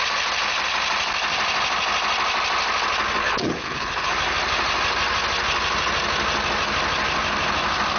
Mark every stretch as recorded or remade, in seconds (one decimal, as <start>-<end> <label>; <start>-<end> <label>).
0.0-3.2 recorded; 3.2-4.1 remade; 4.1-8.0 recorded